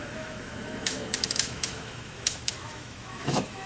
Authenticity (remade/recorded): remade